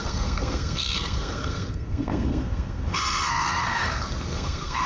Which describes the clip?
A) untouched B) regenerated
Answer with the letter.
B